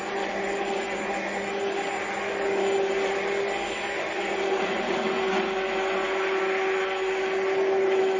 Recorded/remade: recorded